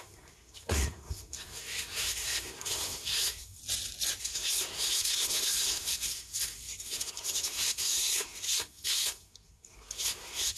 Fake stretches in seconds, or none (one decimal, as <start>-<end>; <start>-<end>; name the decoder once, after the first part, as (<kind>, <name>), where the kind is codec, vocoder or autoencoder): 0.0-3.6 (codec, SNAC); 4.2-10.6